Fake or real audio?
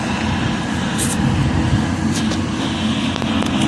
real